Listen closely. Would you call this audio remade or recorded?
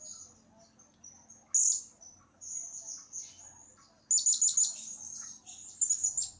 recorded